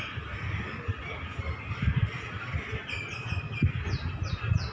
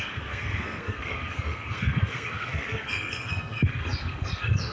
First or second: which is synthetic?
second